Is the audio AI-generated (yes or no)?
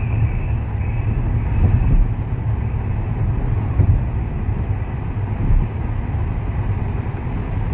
no